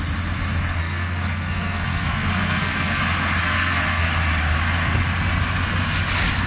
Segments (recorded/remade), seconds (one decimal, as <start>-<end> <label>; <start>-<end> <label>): 0.0-0.8 recorded; 0.8-3.0 remade; 3.0-3.4 recorded; 3.4-4.1 remade; 4.1-6.5 recorded

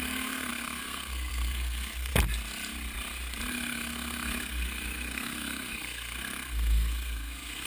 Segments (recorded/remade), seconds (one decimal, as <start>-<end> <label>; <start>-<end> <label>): 0.0-2.1 remade; 2.1-3.5 recorded; 3.5-7.7 remade

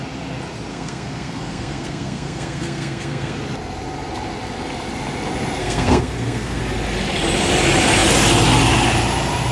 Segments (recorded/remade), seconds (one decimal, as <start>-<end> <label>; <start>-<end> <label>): 0.0-0.7 recorded; 0.7-3.4 remade; 3.4-5.6 recorded; 5.6-6.6 remade; 6.6-9.5 recorded

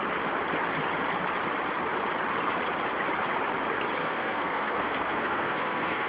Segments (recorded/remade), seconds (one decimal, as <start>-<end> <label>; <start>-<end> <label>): 0.0-4.0 recorded; 4.0-6.1 remade

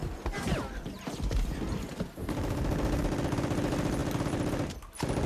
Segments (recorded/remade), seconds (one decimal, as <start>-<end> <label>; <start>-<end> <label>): 0.0-5.3 recorded

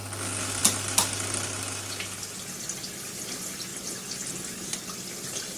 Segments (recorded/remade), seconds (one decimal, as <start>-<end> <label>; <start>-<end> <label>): 0.0-5.6 recorded